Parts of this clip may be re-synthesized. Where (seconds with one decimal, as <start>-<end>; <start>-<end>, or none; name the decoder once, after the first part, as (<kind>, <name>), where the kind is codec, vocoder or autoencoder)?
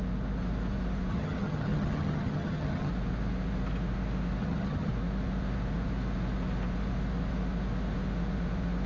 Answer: 1.1-2.9 (vocoder, HiFi-GAN); 4.4-4.9